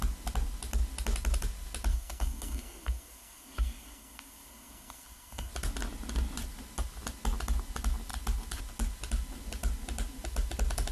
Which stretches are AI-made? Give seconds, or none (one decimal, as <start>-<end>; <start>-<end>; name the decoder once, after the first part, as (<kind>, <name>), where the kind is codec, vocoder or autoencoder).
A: 1.9-5.5 (codec, SNAC)